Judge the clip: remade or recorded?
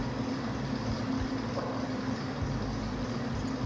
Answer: recorded